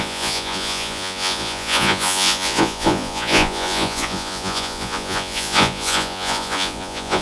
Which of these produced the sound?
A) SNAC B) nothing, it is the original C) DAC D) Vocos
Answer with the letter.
D